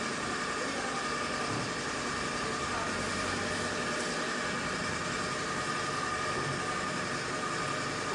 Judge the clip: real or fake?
real